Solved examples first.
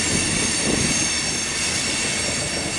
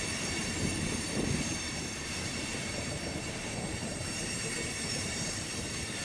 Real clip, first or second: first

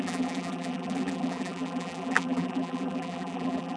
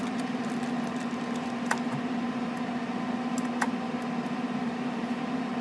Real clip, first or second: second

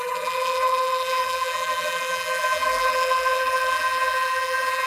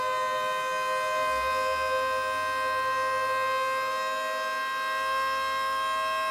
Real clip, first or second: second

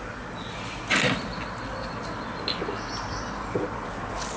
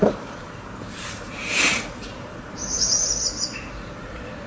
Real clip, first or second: first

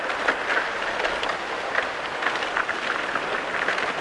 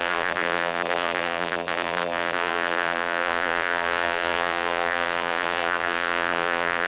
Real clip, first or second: first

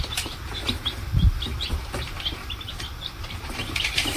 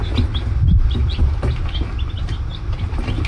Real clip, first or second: second